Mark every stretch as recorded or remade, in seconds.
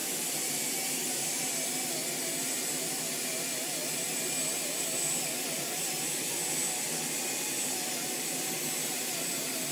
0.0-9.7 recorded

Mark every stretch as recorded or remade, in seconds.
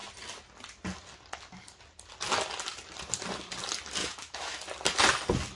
0.0-4.0 recorded; 4.0-4.6 remade; 4.6-5.6 recorded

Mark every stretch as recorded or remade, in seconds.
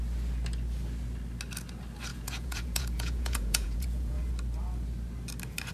0.0-2.1 recorded; 2.1-4.3 remade; 4.3-5.7 recorded